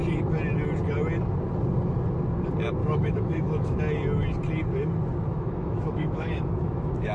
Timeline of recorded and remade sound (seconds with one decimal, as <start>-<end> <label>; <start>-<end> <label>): 0.0-2.8 recorded; 2.8-3.8 remade; 3.8-5.3 recorded; 5.3-7.1 remade